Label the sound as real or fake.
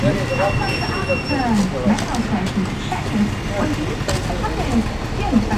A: real